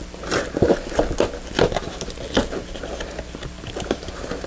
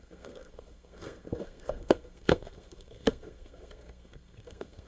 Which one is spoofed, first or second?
second